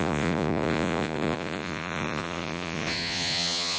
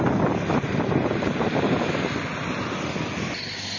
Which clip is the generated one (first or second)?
first